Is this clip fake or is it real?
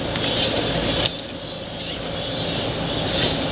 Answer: real